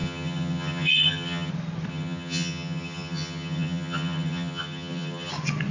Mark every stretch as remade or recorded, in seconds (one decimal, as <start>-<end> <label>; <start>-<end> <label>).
0.0-1.5 remade; 1.5-1.9 recorded; 1.9-5.3 remade; 5.3-5.7 recorded

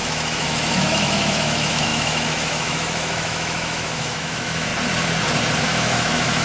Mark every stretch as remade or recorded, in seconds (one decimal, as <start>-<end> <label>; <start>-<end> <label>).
0.0-4.7 remade; 4.7-5.6 recorded; 5.6-6.4 remade